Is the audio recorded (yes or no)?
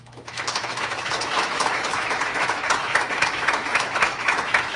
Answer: no